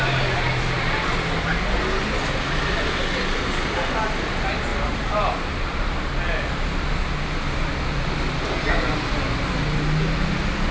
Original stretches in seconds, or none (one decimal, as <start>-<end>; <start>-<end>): 0.0-10.7